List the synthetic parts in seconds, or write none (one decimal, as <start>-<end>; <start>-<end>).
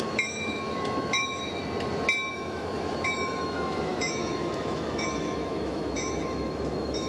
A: 0.0-1.6; 2.3-7.1